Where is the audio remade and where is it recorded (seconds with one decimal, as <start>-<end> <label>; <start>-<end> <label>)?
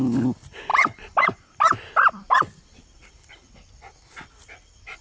0.0-5.0 recorded